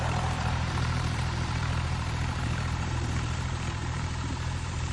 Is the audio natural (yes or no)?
no